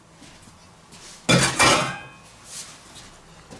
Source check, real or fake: real